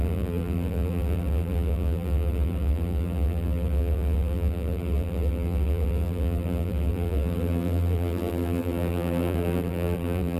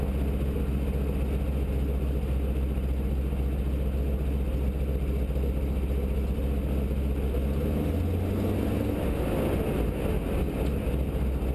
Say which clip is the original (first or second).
second